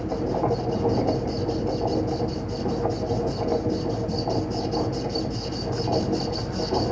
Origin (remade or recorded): recorded